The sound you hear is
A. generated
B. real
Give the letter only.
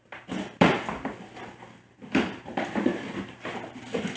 A